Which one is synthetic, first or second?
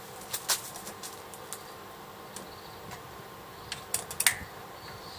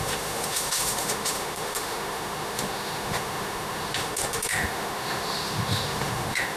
second